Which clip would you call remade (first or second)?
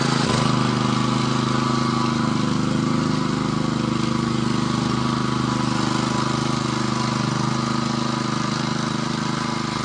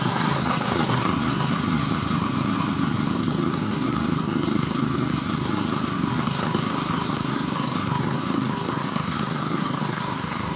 second